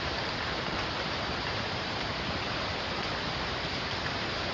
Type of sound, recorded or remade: remade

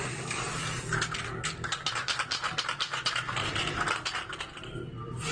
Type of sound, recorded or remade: remade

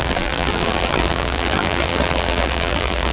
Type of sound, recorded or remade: remade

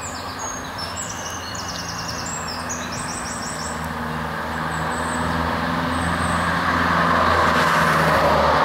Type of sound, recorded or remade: recorded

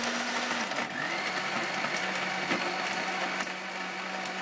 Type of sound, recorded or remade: recorded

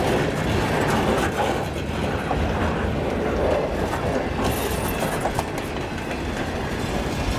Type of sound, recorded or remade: recorded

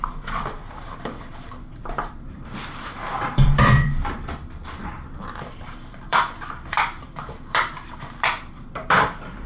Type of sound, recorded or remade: remade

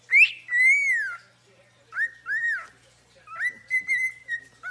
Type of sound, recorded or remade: recorded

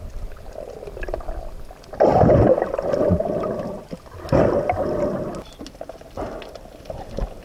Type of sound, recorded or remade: recorded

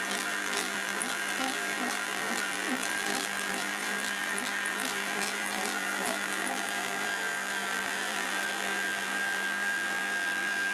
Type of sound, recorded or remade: remade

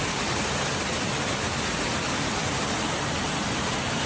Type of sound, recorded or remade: recorded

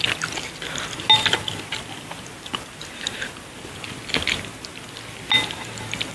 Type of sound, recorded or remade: recorded